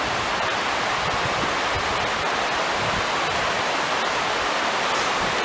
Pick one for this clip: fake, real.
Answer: real